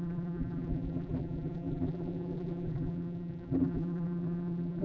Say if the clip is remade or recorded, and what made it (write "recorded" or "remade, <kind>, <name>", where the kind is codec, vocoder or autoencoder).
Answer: remade, vocoder, BigVGAN v2